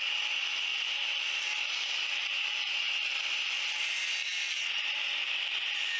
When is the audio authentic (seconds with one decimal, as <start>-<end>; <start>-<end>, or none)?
0.0-0.7; 1.5-4.2